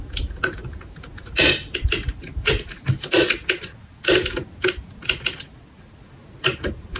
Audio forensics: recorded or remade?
recorded